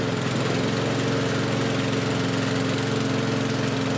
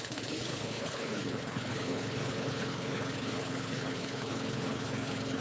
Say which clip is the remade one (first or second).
second